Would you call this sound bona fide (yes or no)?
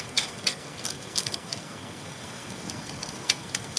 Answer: no